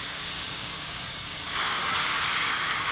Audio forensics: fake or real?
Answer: fake